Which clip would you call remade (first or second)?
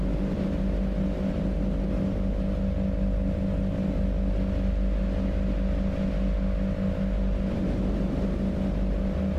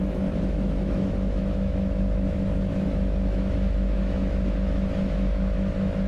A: second